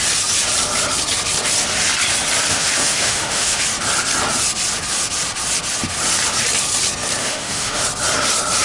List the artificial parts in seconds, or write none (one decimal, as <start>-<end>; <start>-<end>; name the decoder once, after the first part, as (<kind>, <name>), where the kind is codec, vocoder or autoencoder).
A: 2.5-3.6 (autoencoder, DAC-VAE); 7.2-7.8